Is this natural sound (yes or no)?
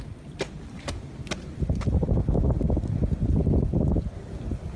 yes